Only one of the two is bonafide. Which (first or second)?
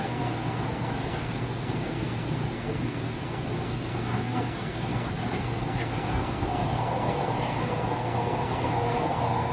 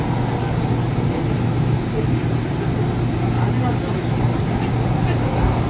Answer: second